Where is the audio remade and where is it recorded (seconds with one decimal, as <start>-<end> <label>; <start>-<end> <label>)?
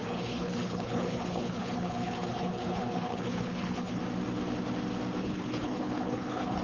0.0-4.0 remade; 4.0-5.2 recorded; 5.2-6.6 remade